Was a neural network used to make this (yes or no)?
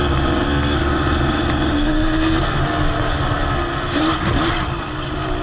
no